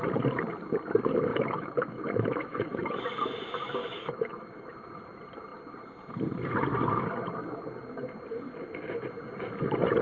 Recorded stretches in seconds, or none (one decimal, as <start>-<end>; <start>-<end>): 0.0-1.3; 3.0-3.8; 4.7-10.0